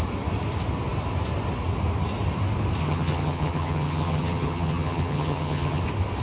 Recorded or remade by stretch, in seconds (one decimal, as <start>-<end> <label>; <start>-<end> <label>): 0.0-2.8 recorded; 2.8-5.8 remade; 5.8-6.2 recorded